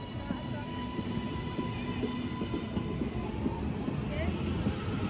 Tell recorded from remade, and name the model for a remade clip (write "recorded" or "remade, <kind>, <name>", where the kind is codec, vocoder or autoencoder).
recorded